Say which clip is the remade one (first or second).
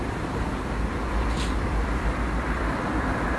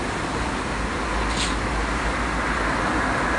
first